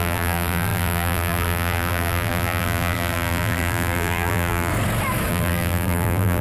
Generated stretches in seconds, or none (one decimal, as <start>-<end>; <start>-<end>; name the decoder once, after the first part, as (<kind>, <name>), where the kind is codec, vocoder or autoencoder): 0.0-4.7 (vocoder, BigVGAN v2); 5.3-6.4